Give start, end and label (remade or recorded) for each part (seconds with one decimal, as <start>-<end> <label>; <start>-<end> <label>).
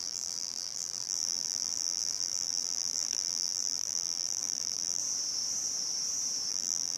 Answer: 0.0-5.0 remade; 5.0-6.5 recorded; 6.5-7.0 remade